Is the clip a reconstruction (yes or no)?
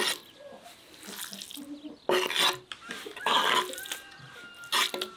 no